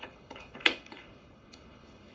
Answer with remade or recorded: remade